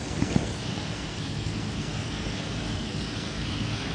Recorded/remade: remade